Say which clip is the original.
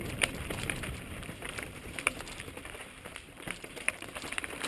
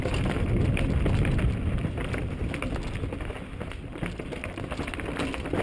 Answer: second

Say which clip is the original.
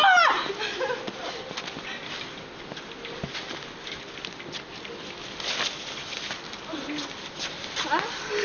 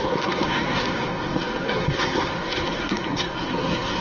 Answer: first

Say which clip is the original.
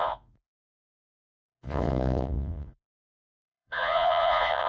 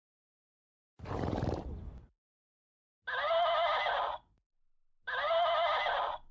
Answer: second